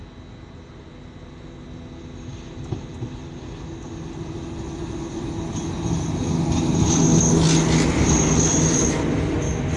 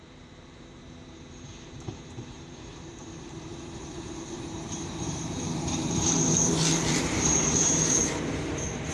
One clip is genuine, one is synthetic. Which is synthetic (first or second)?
second